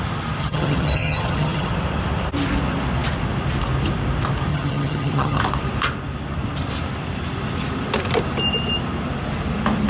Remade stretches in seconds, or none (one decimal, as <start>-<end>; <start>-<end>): 0.4-1.7; 4.5-5.4